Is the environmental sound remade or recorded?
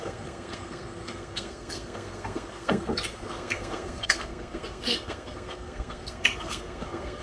remade